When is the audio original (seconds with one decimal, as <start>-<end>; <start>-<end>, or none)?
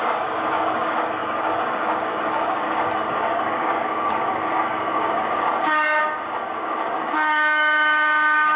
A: none